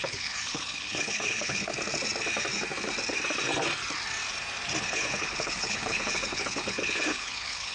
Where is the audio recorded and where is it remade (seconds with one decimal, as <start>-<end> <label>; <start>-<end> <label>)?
0.0-1.7 remade; 1.7-4.8 recorded; 4.8-7.7 remade